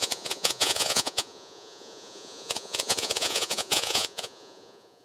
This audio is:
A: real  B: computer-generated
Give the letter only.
B